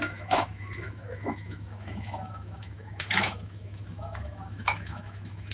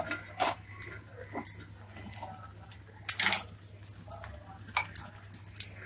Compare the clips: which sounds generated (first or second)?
first